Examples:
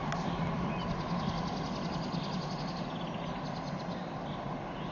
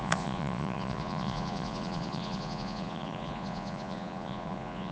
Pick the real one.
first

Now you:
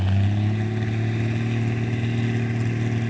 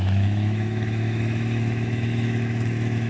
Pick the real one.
first